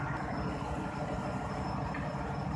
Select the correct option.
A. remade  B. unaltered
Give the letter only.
A